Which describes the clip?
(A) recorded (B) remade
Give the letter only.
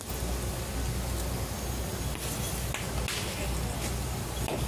A